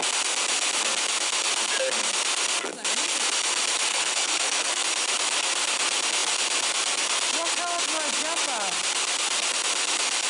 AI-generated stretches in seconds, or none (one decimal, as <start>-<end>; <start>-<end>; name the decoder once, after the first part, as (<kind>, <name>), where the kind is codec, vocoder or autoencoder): 3.9-4.8 (codec, SNAC)